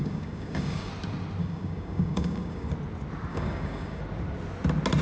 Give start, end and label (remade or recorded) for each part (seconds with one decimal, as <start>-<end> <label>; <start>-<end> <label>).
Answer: 0.0-0.9 remade; 0.9-1.4 recorded; 1.4-2.7 remade; 2.7-3.3 recorded; 3.3-4.0 remade; 4.0-5.0 recorded